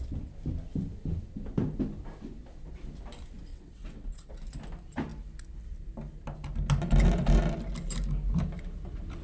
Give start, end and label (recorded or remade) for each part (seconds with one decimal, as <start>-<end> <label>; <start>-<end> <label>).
0.0-3.5 recorded; 3.5-4.3 remade; 4.3-9.2 recorded